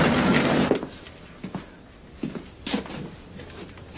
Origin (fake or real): real